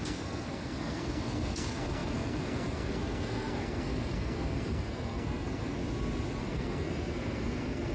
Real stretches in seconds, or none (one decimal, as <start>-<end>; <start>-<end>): 5.8-6.4